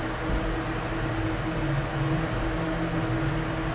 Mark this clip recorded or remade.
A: recorded